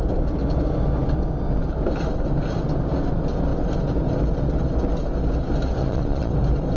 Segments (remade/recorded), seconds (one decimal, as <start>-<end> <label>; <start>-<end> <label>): 0.0-5.8 recorded; 5.8-6.3 remade; 6.3-6.8 recorded